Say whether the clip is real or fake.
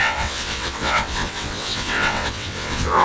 fake